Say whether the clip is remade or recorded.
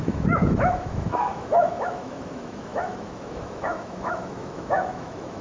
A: remade